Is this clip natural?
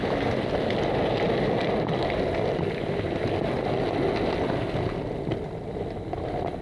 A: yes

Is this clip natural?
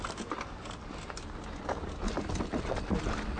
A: yes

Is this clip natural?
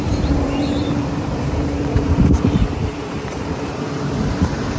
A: no